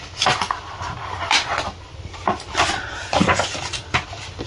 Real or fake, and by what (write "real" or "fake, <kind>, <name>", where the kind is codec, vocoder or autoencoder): real